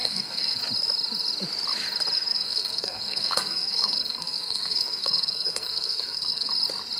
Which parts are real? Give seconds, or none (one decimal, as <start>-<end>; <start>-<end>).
0.6-2.3; 6.5-7.0